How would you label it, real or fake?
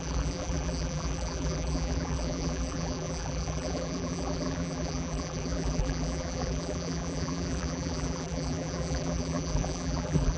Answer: fake